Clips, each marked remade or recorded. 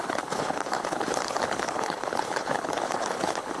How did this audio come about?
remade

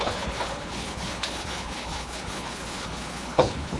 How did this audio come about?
remade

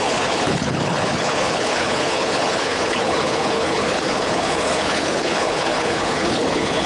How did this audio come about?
remade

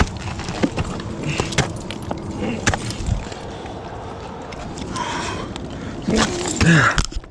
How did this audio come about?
recorded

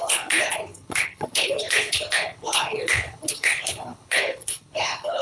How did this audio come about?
remade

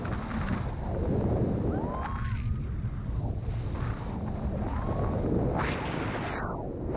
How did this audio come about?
recorded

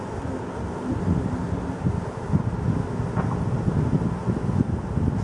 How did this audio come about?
recorded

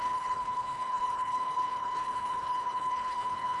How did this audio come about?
remade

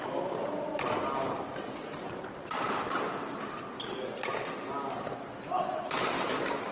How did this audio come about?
recorded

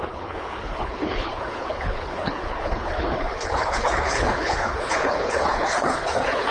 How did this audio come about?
remade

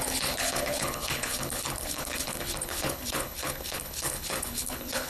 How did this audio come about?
remade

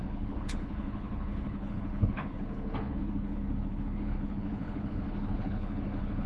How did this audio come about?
remade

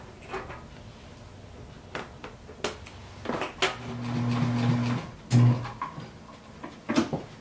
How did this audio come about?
recorded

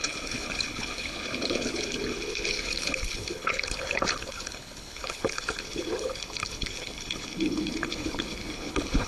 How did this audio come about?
remade